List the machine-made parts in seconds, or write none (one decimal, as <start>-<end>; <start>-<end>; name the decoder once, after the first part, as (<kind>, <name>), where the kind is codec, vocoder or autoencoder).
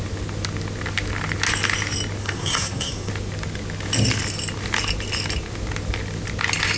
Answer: 2.2-3.1 (codec, SNAC)